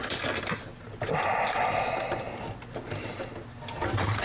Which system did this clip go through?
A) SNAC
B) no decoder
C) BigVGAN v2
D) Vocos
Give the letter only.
B